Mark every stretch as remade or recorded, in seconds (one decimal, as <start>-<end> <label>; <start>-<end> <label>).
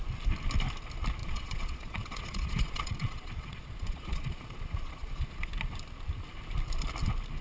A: 0.0-1.2 recorded; 1.2-5.5 remade; 5.5-7.4 recorded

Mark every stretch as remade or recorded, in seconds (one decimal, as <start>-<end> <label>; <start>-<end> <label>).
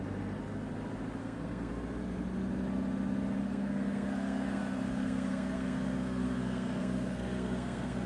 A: 0.0-1.2 recorded; 1.2-1.7 remade; 1.7-3.4 recorded; 3.4-8.1 remade